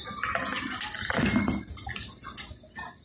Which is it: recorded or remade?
recorded